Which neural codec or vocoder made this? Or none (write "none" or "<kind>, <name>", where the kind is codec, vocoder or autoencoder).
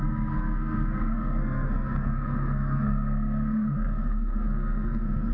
codec, SNAC